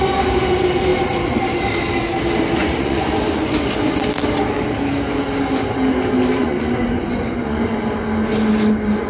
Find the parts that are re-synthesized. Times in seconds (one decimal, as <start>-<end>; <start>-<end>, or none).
2.6-4.0; 6.4-7.6